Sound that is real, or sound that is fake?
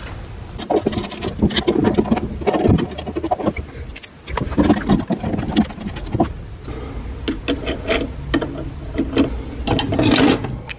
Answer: real